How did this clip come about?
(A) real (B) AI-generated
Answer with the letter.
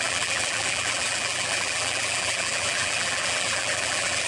B